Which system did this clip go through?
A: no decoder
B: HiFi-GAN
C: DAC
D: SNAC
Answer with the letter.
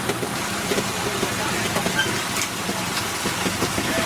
A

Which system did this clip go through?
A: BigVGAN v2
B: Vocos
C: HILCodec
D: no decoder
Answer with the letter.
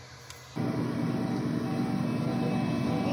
D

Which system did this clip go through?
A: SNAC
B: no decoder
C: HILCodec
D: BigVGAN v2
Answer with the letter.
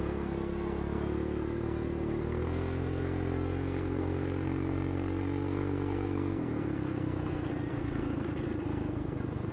A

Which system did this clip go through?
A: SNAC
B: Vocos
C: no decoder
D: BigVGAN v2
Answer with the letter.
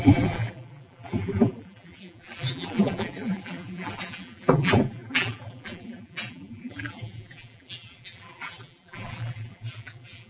D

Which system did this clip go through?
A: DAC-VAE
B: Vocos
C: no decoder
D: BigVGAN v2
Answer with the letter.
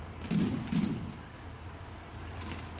C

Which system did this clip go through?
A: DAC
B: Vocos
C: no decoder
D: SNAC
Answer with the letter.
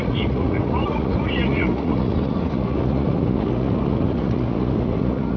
B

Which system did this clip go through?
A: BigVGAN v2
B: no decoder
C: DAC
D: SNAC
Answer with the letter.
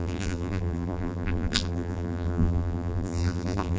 A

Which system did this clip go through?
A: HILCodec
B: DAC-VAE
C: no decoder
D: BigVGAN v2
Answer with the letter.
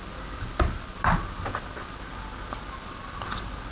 C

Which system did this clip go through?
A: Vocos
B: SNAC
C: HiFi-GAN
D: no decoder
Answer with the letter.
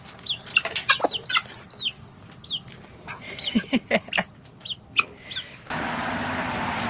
D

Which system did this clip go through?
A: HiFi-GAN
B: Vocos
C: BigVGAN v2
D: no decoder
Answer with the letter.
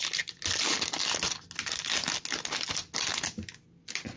D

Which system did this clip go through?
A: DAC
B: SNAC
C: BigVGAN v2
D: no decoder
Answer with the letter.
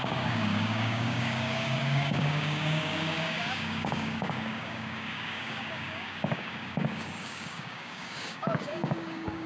A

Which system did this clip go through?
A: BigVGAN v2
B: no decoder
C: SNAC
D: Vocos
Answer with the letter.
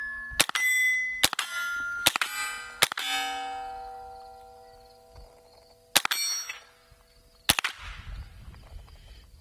B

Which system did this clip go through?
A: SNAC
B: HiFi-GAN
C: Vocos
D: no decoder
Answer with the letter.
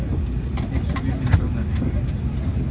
D